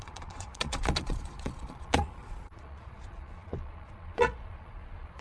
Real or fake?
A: fake